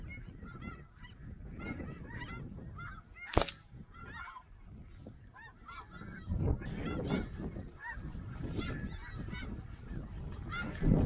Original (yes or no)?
yes